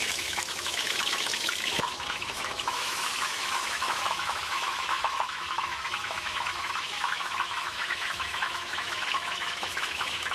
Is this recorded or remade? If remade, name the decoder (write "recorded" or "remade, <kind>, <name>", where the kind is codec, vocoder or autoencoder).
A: remade, autoencoder, DAC-VAE